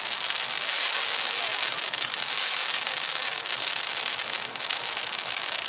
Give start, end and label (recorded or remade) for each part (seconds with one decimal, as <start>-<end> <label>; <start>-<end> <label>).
0.0-5.7 remade